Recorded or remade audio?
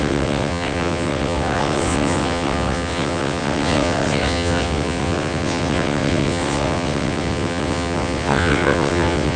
remade